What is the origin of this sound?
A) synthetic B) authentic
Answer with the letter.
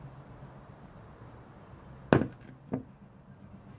B